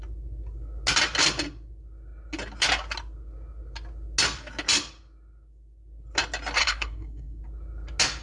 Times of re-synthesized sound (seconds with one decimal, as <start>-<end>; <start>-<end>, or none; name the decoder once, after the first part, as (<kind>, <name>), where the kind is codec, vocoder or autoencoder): 6.6-7.4 (codec, SNAC)